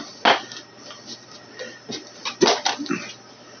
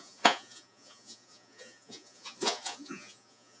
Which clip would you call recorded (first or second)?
first